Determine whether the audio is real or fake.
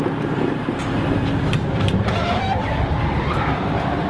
fake